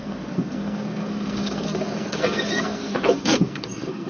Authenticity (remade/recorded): remade